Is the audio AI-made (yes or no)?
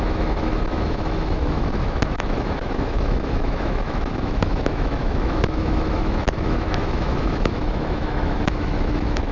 yes